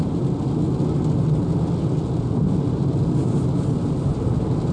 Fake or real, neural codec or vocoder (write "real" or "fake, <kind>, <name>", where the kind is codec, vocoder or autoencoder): real